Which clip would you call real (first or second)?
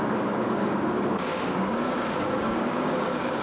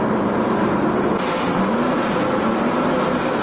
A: second